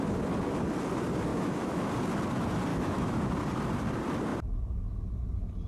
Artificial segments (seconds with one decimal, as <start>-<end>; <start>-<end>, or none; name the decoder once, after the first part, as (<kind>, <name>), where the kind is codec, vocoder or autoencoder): 1.3-1.9 (autoencoder, DAC-VAE); 2.7-3.3